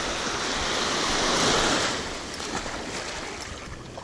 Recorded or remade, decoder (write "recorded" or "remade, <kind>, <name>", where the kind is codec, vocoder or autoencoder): recorded